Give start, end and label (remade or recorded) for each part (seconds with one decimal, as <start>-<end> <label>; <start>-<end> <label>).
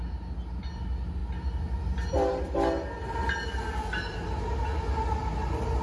0.0-5.8 recorded